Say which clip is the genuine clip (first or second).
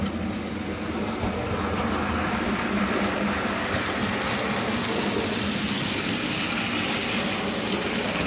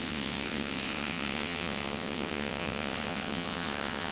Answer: first